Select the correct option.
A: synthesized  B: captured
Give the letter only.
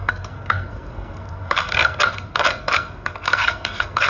A